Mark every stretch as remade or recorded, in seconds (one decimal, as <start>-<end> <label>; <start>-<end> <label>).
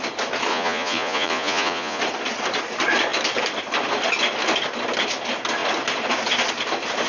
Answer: 0.0-0.5 recorded; 0.5-2.0 remade; 2.0-7.1 recorded